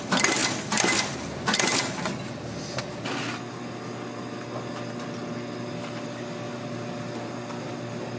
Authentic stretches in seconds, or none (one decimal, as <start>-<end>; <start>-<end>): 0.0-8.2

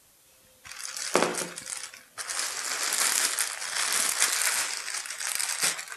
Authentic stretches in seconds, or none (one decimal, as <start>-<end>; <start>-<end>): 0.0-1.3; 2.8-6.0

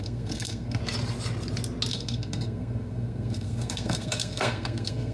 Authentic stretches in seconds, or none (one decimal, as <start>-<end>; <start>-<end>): 0.8-1.9